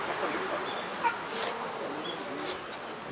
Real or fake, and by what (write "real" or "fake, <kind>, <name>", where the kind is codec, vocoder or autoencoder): real